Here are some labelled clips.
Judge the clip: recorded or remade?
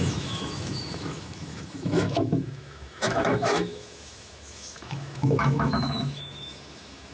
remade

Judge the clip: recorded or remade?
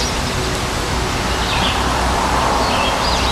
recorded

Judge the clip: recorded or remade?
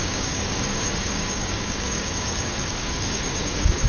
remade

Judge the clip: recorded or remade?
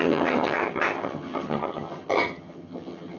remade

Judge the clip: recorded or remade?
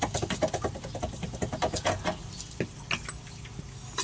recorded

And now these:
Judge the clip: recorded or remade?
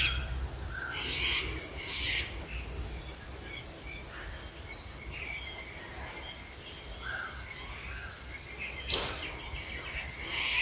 recorded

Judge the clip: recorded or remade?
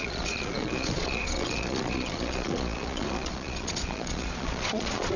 remade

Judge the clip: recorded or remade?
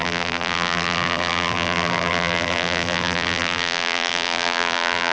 remade